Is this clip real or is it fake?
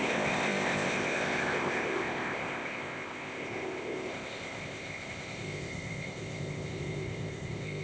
fake